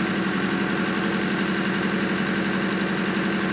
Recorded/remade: recorded